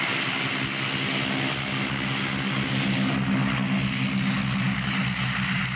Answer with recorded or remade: recorded